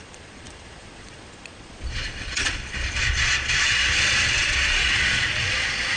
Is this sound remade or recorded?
remade